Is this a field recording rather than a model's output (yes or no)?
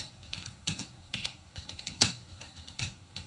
no